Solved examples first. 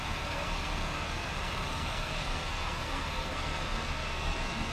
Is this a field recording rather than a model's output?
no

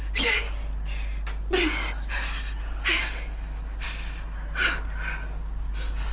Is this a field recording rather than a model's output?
yes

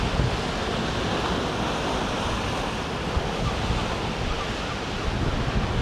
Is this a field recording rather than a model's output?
yes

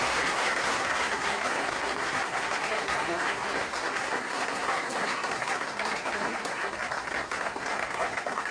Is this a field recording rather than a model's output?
no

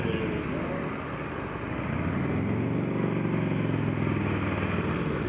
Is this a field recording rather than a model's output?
yes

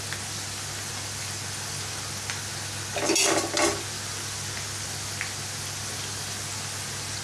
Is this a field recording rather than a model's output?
yes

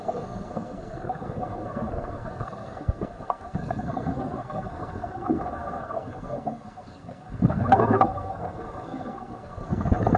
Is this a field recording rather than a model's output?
no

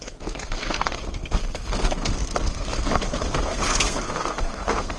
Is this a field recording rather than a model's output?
no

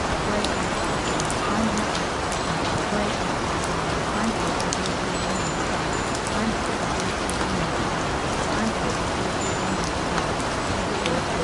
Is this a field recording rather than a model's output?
yes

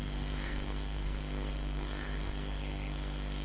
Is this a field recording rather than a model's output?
no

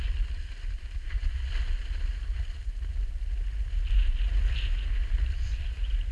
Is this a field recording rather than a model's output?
yes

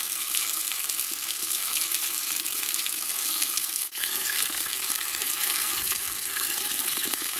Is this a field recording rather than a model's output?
no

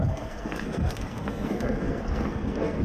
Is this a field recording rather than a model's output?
no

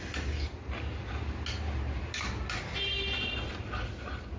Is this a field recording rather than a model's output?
yes